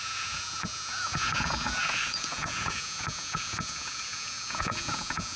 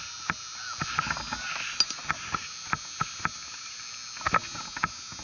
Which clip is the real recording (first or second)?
second